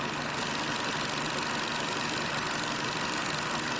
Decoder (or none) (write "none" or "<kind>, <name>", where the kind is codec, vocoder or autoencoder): none